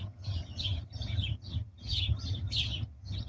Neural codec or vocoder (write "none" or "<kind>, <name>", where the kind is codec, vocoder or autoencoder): vocoder, HiFi-GAN